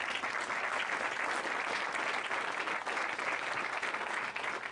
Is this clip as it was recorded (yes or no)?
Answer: yes